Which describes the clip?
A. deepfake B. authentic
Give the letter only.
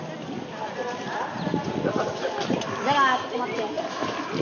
B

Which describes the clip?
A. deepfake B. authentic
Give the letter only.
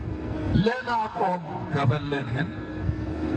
A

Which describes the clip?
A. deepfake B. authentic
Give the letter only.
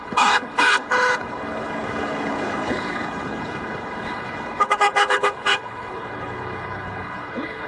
A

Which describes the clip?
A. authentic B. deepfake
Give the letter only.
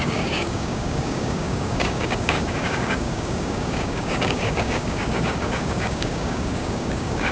B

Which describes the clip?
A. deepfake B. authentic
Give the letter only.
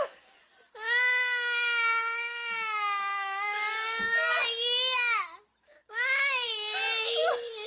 B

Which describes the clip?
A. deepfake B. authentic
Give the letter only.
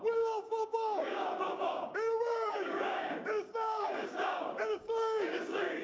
A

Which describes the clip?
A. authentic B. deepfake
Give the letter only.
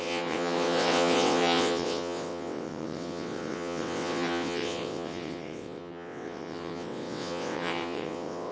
B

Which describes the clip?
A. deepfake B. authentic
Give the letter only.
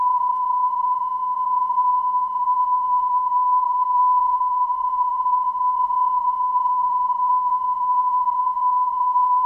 A